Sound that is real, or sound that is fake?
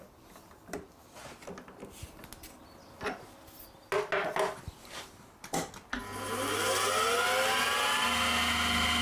real